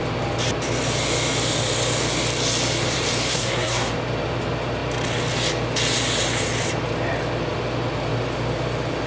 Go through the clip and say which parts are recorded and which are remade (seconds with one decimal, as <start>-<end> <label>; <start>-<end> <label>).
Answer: 0.0-3.3 recorded; 3.3-3.9 remade; 3.9-9.1 recorded